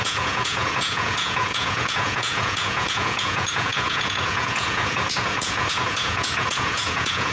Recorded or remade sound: remade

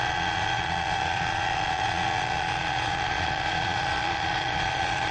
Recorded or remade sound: remade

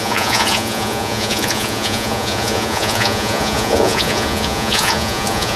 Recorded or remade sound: remade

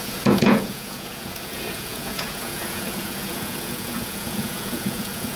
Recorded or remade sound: remade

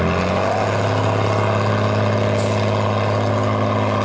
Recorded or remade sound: recorded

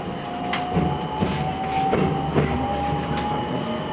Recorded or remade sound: recorded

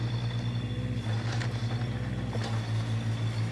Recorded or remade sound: recorded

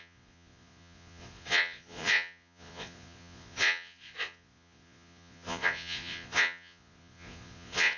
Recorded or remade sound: remade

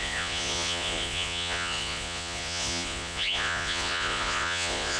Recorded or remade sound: remade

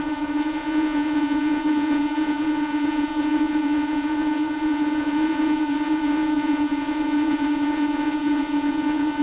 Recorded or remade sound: remade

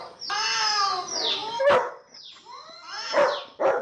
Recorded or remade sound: recorded